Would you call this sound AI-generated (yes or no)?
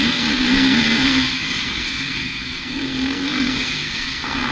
yes